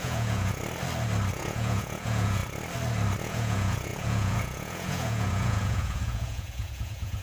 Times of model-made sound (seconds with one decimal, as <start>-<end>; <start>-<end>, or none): 0.0-0.6; 1.3-2.4; 3.2-7.2